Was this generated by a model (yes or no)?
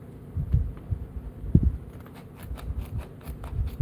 no